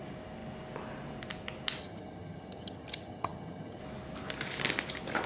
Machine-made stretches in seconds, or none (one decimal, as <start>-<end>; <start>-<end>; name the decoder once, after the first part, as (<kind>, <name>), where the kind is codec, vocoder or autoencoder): 1.8-3.8 (vocoder, HiFi-GAN)